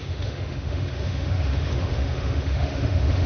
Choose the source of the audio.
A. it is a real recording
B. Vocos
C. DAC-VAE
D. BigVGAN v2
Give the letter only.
C